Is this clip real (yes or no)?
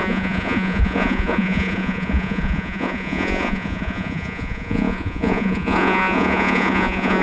no